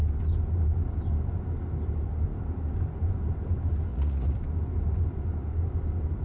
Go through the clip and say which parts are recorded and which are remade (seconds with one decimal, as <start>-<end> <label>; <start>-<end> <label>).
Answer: 0.0-3.9 recorded; 3.9-4.4 remade; 4.4-6.2 recorded